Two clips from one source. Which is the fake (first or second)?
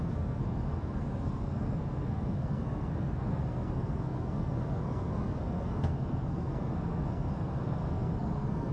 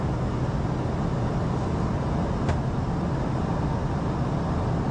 first